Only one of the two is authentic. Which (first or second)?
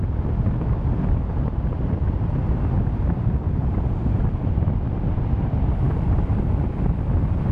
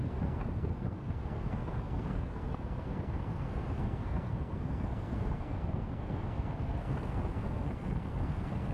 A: first